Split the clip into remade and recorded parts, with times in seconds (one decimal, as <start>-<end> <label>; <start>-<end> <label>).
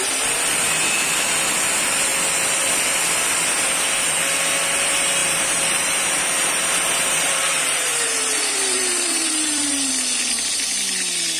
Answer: 0.0-5.2 recorded; 5.2-9.9 remade; 9.9-11.4 recorded